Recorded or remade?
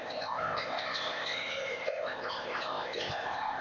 remade